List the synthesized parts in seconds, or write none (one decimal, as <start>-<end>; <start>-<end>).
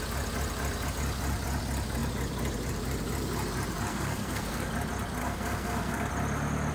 3.9-4.7; 5.2-6.1